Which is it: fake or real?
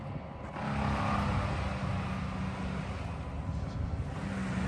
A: real